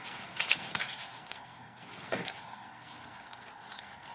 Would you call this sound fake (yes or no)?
yes